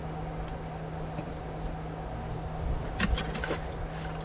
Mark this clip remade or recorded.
recorded